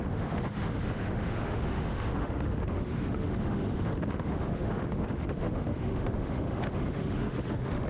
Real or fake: fake